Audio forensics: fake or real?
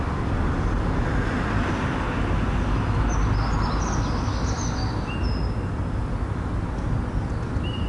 real